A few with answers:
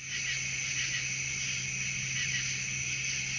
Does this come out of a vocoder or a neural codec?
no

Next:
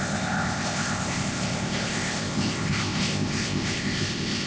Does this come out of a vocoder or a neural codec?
yes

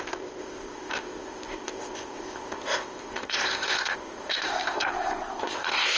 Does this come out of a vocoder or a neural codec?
yes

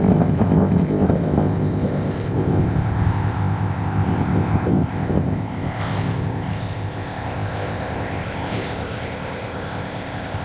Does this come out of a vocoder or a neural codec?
yes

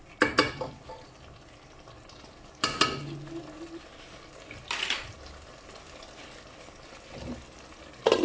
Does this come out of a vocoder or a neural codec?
no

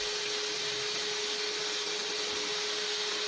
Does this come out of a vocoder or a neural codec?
no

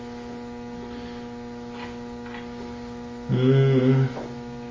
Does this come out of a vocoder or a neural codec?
no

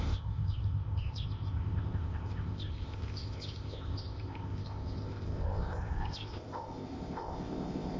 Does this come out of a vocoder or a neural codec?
yes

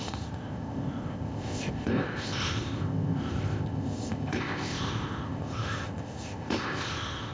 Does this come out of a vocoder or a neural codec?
yes